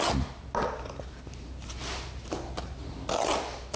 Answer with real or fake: real